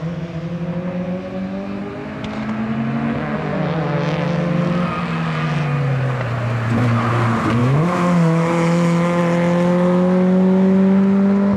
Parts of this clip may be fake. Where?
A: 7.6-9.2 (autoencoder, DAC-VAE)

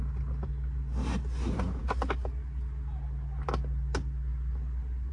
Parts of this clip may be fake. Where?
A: none

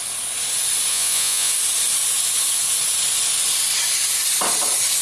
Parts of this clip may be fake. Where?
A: 0.9-1.5 (vocoder, Vocos)

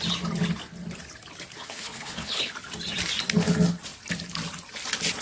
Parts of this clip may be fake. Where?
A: 1.6-2.5 (codec, HILCodec)

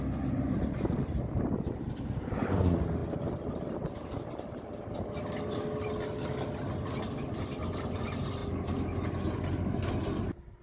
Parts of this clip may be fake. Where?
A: none

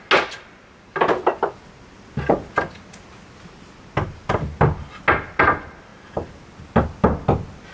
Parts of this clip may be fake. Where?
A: 4.2-4.9 (vocoder, BigVGAN v2)